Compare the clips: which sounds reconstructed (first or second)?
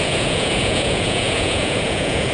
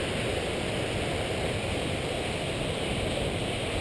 first